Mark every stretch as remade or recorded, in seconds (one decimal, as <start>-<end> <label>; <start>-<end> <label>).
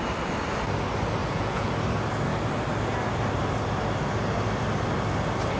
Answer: 0.0-1.2 recorded; 1.2-1.7 remade; 1.7-5.6 recorded